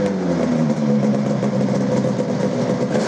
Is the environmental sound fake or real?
real